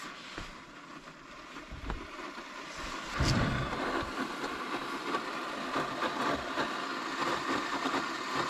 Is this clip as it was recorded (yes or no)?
no